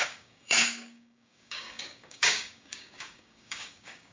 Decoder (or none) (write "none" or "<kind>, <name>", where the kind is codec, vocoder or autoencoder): codec, DAC